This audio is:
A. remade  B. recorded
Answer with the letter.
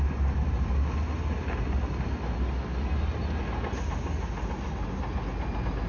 B